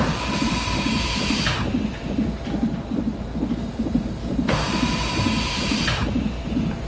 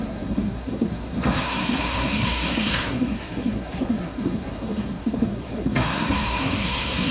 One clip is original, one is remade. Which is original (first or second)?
first